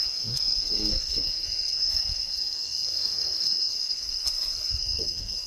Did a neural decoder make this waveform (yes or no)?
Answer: yes